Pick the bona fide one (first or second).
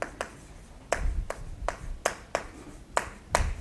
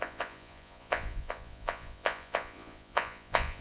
first